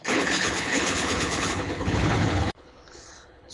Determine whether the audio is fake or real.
fake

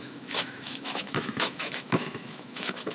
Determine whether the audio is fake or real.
fake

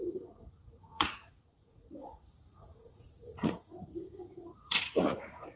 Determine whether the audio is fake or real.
fake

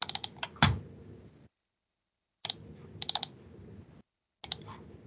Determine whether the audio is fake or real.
real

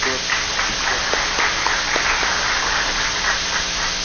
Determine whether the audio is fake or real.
real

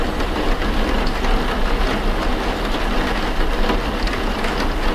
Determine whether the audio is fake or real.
real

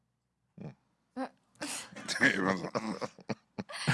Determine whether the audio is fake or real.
real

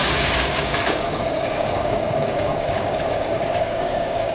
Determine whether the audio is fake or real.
fake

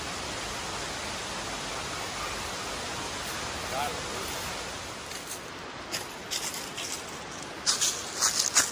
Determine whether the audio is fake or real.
real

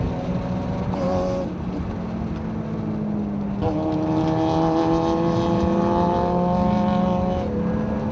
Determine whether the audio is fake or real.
real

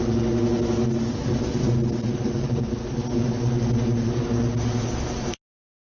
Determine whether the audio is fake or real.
real